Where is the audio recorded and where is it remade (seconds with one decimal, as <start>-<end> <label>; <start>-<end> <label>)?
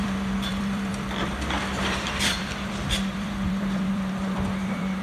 0.0-5.0 remade